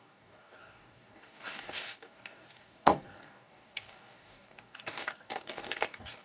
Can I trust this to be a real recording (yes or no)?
no